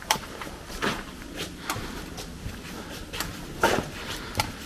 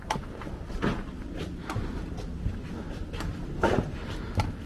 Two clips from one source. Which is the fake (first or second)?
first